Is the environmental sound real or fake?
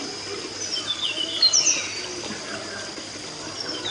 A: real